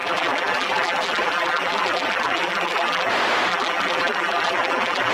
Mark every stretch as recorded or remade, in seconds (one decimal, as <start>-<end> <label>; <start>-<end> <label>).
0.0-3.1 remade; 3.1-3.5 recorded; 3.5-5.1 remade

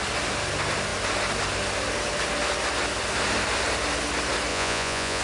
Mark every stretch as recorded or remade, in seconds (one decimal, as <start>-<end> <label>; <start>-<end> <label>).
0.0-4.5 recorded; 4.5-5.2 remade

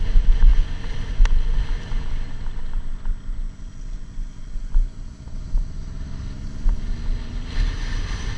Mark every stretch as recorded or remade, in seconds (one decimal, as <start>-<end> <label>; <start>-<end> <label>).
0.0-8.4 recorded

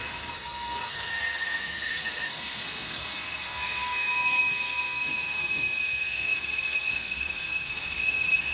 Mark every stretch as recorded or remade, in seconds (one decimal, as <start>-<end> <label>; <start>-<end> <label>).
0.0-8.5 remade

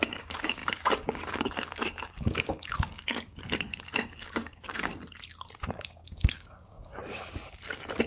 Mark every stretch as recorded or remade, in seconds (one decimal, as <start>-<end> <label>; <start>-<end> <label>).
0.0-4.9 remade; 4.9-5.6 recorded; 5.6-7.0 remade; 7.0-8.1 recorded

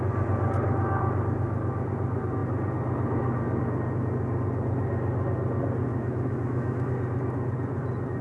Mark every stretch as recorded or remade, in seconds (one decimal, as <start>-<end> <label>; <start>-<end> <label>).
0.0-5.9 recorded; 5.9-6.9 remade; 6.9-8.2 recorded